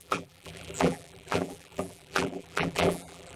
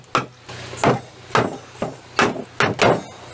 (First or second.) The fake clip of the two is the first